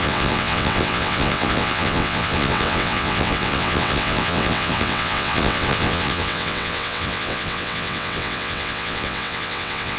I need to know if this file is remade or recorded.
remade